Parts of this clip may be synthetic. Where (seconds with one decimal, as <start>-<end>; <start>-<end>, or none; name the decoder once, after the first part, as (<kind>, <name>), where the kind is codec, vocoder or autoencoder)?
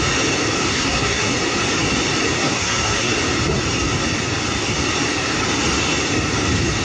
0.7-1.3 (codec, SNAC); 2.4-3.1